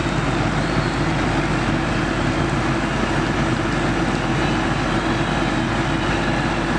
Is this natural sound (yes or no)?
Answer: yes